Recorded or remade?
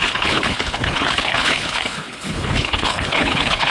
remade